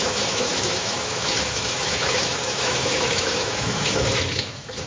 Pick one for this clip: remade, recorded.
remade